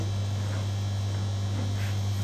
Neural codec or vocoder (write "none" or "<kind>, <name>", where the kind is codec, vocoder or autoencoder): none